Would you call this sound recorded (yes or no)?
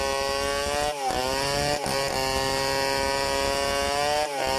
yes